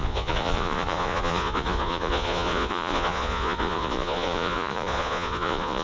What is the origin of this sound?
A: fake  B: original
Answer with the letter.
A